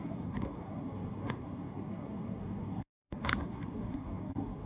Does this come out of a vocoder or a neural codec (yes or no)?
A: yes